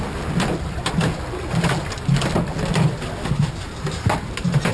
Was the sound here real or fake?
real